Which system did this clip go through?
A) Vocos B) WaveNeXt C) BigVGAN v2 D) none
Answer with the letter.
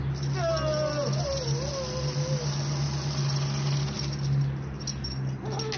D